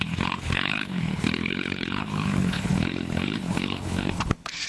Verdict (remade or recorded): remade